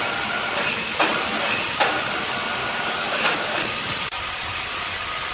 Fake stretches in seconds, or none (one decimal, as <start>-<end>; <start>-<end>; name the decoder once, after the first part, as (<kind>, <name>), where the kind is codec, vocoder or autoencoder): 2.6-3.6 (codec, DAC)